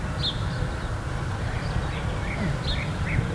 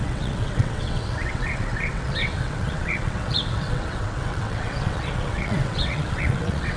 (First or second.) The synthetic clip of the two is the second